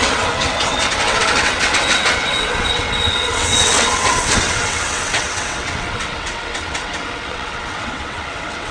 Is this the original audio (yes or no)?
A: no